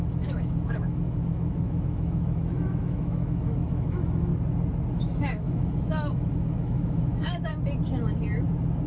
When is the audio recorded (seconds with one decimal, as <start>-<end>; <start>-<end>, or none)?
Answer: 4.3-4.9; 7.5-8.9